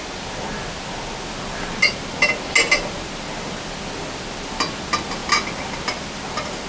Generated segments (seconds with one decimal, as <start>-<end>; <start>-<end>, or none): none